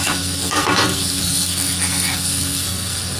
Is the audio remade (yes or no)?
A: yes